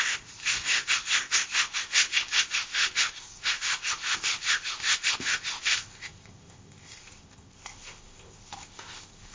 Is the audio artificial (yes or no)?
yes